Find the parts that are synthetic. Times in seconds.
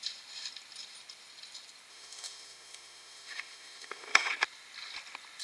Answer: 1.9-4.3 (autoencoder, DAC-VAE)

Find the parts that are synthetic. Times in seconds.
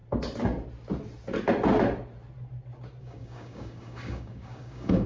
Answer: 3.0-5.1 (codec, DAC)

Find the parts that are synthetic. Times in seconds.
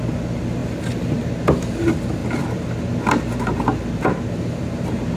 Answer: 2.2-3.9 (vocoder, BigVGAN v2)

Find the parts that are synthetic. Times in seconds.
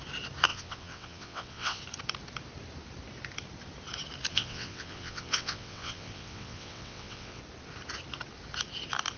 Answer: 0.5-1.8 (vocoder, WaveNeXt); 4.3-7.4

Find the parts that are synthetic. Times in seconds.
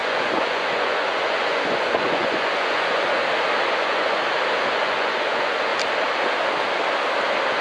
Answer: 0.0-3.2 (vocoder, Vocos); 3.8-4.2; 4.7-5.7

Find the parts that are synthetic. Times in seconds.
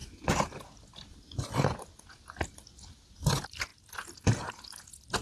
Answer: none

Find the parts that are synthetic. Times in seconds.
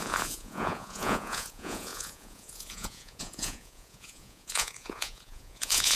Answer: 0.0-6.0 (vocoder, Vocos)